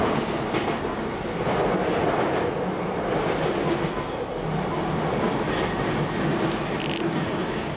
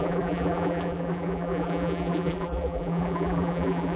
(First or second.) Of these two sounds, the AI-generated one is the second